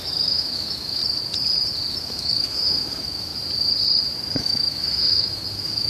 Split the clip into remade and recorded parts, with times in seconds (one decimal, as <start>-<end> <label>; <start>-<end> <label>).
0.0-1.0 remade; 1.0-1.9 recorded; 1.9-3.3 remade; 3.3-4.4 recorded; 4.4-5.9 remade